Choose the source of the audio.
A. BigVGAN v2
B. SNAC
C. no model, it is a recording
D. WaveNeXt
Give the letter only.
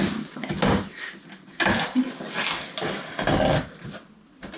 C